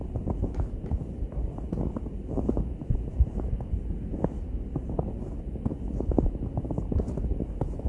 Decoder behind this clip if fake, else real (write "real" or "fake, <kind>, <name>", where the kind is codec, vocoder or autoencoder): real